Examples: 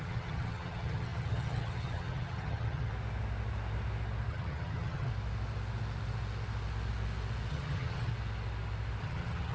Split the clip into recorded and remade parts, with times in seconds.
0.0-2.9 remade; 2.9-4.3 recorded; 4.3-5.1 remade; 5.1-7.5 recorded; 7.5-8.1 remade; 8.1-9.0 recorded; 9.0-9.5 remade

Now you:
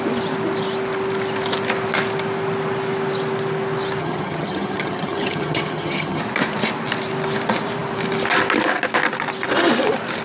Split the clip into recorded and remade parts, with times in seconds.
0.0-4.0 recorded; 4.0-6.2 remade; 6.2-10.2 recorded